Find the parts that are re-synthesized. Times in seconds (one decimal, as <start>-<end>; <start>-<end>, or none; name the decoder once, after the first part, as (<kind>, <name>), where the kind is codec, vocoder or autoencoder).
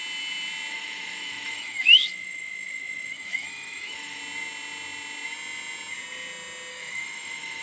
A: 0.7-4.2 (autoencoder, DAC-VAE); 6.7-7.6